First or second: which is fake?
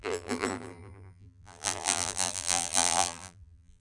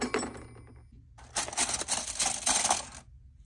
first